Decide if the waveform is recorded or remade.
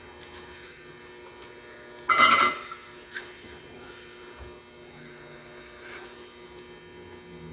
recorded